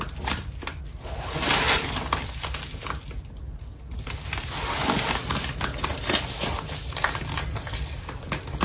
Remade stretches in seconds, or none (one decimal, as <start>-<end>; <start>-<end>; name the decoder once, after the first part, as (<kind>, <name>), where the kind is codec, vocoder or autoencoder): none